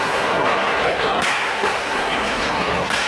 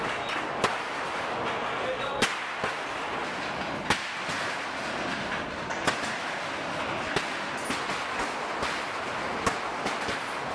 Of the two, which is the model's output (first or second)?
first